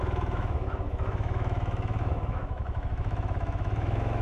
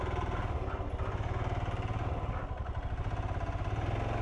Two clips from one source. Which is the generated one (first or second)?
first